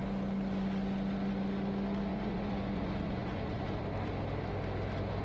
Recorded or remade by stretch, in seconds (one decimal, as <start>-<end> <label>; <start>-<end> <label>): 0.0-2.1 recorded; 2.1-3.7 remade; 3.7-5.2 recorded

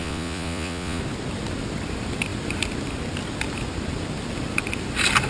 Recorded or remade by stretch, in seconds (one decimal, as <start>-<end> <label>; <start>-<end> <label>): 0.0-1.0 remade; 1.0-5.3 recorded

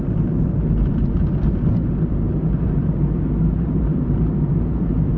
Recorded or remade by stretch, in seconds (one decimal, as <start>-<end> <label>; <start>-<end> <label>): 0.0-5.2 remade

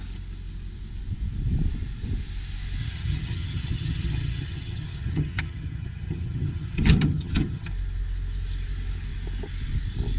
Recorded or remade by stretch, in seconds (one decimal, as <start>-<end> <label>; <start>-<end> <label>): 0.0-2.8 recorded; 2.8-7.7 remade; 7.7-10.2 recorded

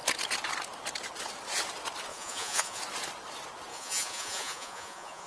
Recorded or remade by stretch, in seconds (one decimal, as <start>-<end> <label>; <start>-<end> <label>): 0.0-2.1 recorded; 2.1-2.8 remade; 2.8-3.7 recorded; 3.7-5.3 remade

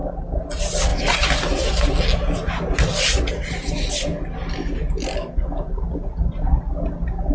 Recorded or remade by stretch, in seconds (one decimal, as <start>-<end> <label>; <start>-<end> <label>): 0.0-7.3 recorded

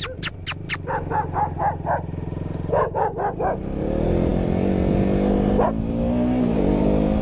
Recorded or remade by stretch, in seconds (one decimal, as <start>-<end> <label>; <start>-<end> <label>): 0.0-7.2 recorded

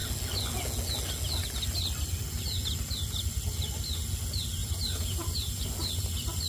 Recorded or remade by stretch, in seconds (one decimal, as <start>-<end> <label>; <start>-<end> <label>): 0.0-4.6 recorded; 4.6-5.7 remade; 5.7-6.5 recorded